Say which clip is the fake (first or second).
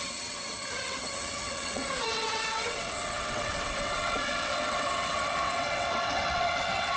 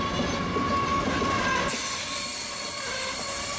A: first